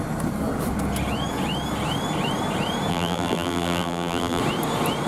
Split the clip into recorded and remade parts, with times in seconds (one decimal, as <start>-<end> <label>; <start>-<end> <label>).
0.0-2.9 recorded; 2.9-4.4 remade; 4.4-5.1 recorded